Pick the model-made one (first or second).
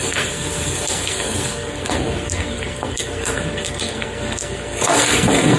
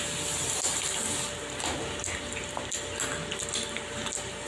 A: first